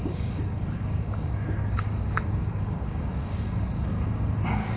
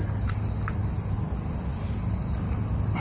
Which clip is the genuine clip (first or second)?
second